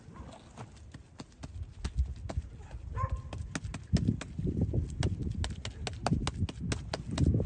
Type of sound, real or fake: real